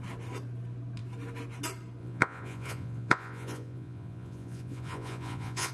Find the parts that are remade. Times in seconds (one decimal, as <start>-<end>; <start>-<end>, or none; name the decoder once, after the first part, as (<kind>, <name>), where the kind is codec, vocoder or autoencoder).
2.0-5.7 (vocoder, Vocos)